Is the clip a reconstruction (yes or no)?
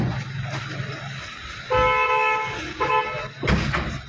no